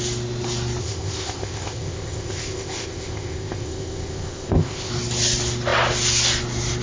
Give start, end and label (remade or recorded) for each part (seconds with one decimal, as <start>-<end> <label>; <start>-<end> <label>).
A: 0.0-0.8 recorded; 0.8-4.9 remade; 4.9-6.8 recorded